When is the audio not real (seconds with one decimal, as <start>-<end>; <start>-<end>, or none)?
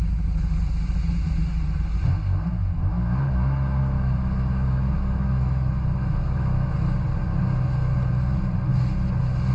2.6-6.7